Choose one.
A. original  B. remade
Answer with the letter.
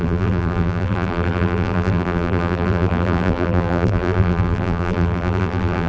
B